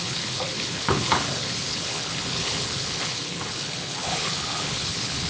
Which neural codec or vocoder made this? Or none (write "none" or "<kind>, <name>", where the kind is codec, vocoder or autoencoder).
codec, HILCodec